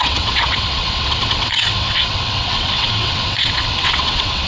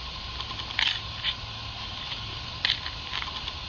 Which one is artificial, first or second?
first